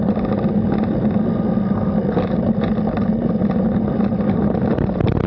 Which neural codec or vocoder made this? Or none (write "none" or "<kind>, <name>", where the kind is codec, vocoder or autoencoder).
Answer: none